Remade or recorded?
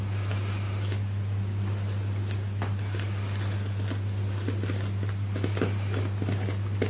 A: recorded